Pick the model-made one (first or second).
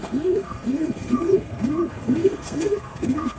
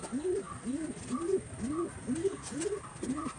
first